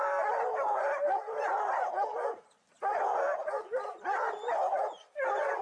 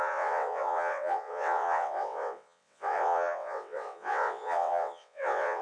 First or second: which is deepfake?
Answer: second